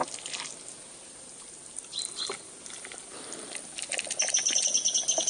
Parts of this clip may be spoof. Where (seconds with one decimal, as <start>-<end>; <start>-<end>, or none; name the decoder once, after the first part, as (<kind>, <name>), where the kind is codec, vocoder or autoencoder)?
none